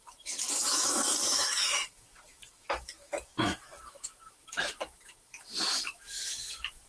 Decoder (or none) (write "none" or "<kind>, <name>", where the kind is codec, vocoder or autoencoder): autoencoder, DAC-VAE